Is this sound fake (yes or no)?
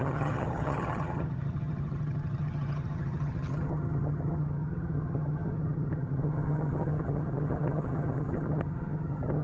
yes